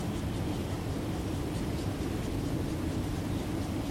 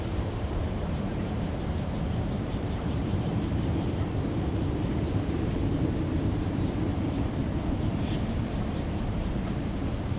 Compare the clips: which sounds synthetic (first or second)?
second